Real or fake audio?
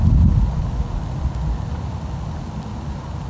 real